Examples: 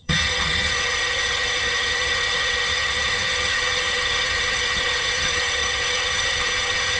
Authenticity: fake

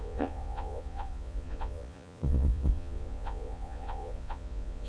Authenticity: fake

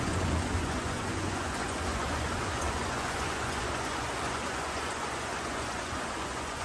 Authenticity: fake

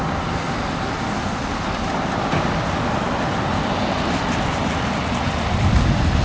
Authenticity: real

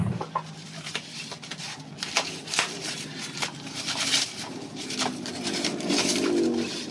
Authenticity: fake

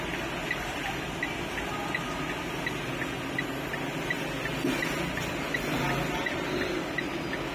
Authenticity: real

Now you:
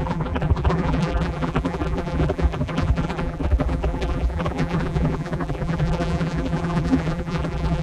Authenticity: fake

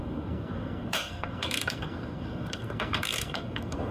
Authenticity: fake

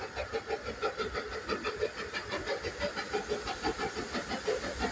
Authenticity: real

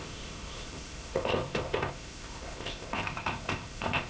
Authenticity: fake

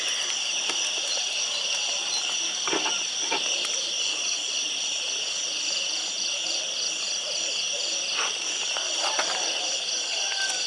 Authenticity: real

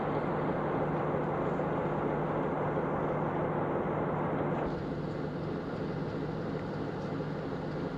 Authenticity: real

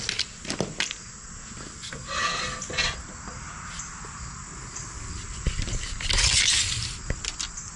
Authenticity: real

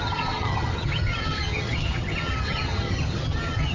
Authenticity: fake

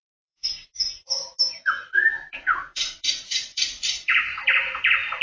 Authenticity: fake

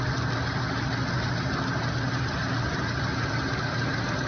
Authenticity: real